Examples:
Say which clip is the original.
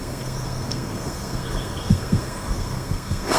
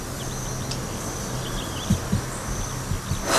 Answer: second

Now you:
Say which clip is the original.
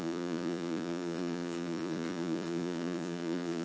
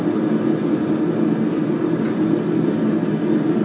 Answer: second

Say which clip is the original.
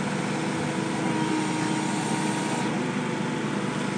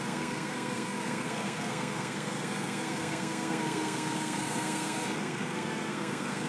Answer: first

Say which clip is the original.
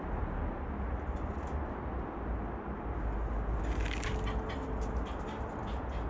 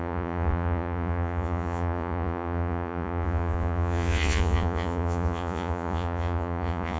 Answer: first